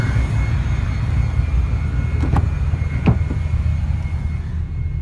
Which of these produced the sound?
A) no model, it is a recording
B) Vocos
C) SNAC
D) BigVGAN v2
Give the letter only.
A